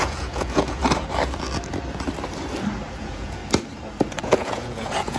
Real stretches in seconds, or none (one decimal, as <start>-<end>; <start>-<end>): 0.8-3.0; 3.4-4.2